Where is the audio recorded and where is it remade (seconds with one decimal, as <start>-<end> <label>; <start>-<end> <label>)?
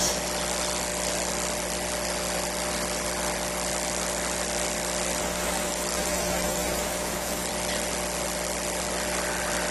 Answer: 0.0-5.2 recorded; 5.2-7.5 remade; 7.5-9.7 recorded